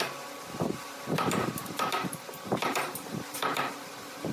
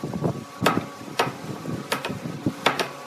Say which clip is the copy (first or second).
first